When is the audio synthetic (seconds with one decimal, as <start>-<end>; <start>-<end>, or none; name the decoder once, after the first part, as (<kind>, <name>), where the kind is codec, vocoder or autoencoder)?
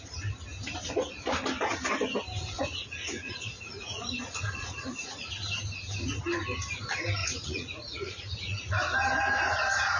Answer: 2.4-5.3 (vocoder, Vocos); 7.2-8.8